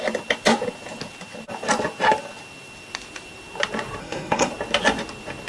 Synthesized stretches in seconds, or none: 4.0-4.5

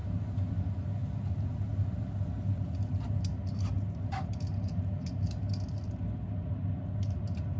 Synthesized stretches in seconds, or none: none

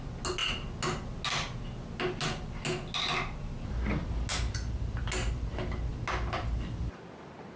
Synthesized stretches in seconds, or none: none

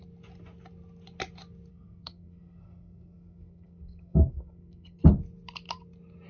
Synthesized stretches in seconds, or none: 1.7-5.0